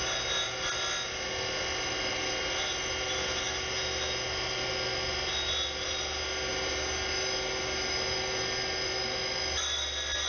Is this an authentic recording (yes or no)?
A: yes